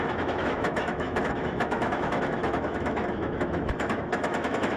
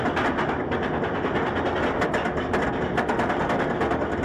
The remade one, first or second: first